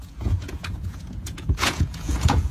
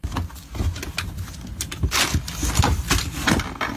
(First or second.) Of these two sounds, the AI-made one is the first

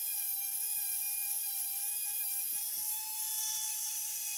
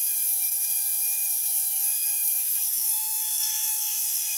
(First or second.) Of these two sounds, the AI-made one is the second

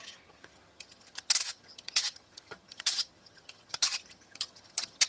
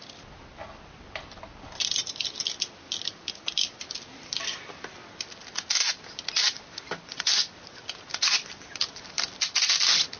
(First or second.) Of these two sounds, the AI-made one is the first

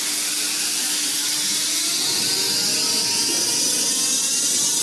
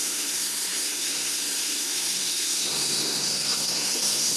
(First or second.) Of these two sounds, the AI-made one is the second